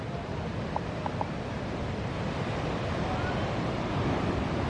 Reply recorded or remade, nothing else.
recorded